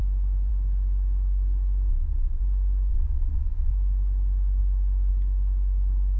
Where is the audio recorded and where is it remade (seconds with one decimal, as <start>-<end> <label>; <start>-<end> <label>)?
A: 0.0-1.9 recorded; 1.9-2.4 remade; 2.4-2.9 recorded; 2.9-3.7 remade; 3.7-6.2 recorded